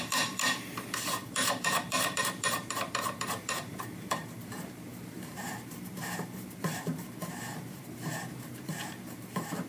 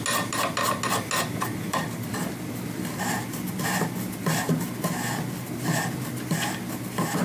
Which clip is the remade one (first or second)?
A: first